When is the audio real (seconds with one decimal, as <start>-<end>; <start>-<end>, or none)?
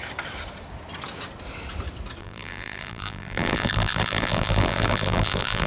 0.0-2.2